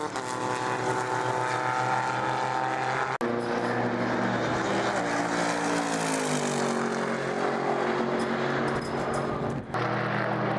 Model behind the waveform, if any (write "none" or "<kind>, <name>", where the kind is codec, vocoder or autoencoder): none